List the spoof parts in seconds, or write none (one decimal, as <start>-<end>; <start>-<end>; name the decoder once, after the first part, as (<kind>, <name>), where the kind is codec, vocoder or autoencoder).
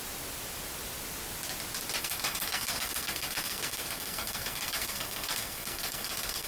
2.0-6.5 (codec, SNAC)